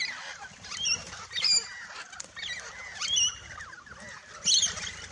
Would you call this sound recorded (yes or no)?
yes